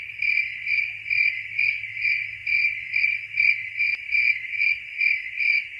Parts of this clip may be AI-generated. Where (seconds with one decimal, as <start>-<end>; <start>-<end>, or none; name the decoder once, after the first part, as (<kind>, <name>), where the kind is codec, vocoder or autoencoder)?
none